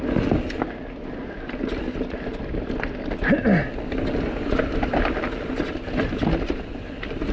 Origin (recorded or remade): recorded